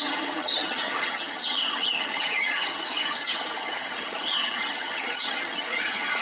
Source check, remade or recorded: remade